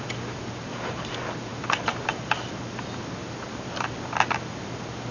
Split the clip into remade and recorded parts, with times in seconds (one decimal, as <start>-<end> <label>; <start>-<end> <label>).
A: 0.0-5.1 recorded